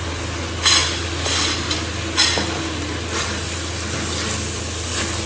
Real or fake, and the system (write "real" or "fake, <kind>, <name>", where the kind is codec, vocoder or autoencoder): real